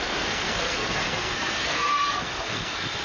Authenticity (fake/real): fake